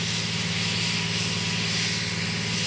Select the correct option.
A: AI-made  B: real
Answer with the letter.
B